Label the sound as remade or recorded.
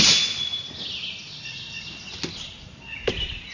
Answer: recorded